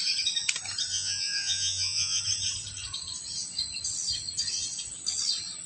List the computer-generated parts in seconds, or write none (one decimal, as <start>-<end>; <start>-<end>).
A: 0.9-2.2